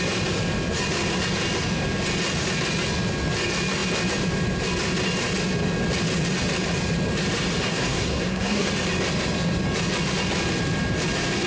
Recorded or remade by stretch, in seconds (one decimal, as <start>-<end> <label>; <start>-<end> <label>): 0.0-7.7 recorded; 7.7-8.7 remade; 8.7-11.5 recorded